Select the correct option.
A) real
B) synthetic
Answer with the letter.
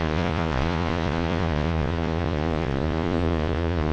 B